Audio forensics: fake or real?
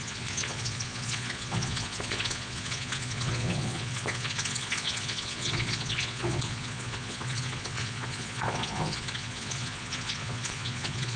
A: fake